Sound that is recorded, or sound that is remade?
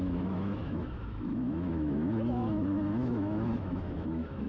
remade